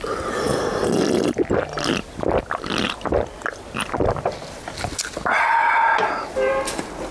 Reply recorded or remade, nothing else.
recorded